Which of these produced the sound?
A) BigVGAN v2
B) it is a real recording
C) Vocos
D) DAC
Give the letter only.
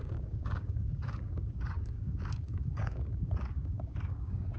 D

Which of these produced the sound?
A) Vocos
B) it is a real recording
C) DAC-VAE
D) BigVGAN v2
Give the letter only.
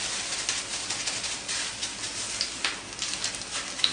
B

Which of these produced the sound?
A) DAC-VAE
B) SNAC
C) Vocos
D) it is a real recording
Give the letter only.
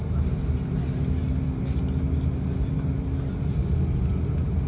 D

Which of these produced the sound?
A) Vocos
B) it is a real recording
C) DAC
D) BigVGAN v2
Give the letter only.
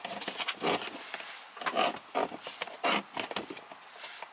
B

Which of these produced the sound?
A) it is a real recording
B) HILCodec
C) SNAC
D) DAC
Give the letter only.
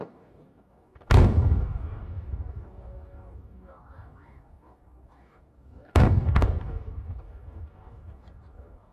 D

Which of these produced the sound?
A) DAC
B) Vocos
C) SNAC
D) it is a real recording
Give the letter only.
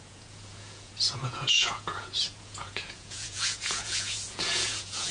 B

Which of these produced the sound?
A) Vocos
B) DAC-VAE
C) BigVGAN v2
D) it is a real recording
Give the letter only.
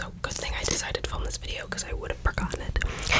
D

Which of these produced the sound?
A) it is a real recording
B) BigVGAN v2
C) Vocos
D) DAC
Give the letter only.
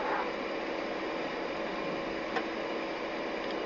A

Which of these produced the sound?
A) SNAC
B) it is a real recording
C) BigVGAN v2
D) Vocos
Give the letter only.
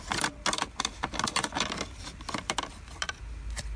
B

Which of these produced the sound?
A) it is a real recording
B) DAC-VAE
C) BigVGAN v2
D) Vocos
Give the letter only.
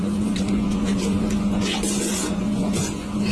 D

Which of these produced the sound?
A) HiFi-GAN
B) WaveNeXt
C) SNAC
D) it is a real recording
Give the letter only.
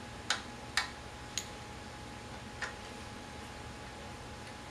D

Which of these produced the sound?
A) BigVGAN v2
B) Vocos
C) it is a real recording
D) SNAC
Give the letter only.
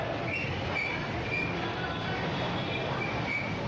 C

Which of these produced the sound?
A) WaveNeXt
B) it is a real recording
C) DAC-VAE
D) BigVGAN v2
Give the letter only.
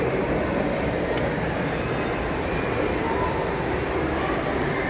B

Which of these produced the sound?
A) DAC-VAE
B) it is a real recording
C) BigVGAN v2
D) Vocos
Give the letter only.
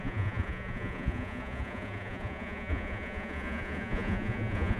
D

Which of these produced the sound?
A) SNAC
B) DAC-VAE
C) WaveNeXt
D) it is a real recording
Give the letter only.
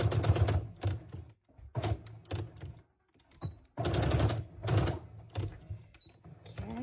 D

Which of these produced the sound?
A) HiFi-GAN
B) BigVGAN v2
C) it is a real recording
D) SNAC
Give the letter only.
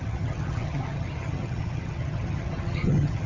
A